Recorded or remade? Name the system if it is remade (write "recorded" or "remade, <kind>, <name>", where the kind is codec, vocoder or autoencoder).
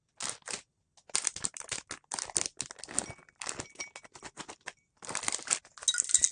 recorded